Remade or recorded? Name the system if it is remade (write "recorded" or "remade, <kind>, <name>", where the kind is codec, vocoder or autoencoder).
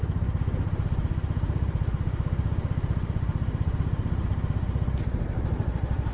remade, vocoder, BigVGAN v2